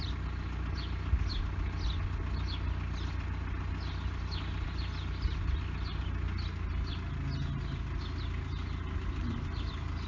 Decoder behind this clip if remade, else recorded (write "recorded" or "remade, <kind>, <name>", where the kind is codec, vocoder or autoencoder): recorded